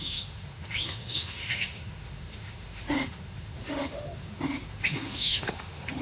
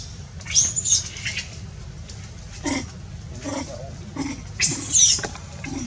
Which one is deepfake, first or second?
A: first